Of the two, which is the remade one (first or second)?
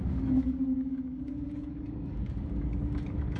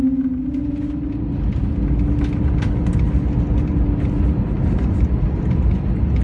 first